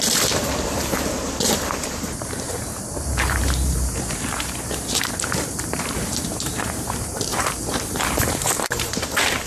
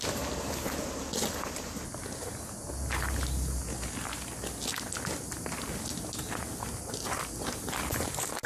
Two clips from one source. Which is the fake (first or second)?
first